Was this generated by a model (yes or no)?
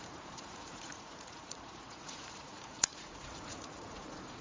yes